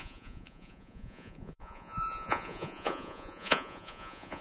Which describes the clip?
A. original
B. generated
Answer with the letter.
B